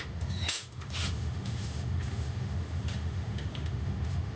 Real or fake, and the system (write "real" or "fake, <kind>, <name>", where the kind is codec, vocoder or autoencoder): fake, autoencoder, DAC-VAE